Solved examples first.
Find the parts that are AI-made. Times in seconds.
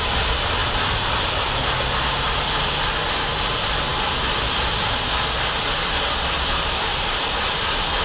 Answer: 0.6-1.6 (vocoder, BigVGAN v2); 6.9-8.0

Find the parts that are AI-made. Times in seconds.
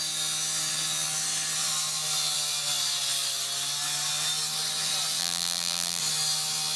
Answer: 5.2-6.0 (vocoder, BigVGAN v2)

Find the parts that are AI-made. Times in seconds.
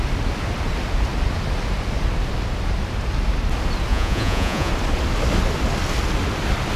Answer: 3.9-4.7 (vocoder, Vocos)